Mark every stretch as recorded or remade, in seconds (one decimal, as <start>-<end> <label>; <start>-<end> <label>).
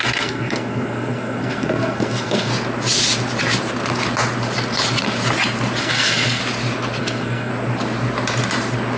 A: 0.0-2.5 remade; 2.5-5.8 recorded; 5.8-6.4 remade; 6.4-7.0 recorded; 7.0-7.5 remade; 7.5-9.0 recorded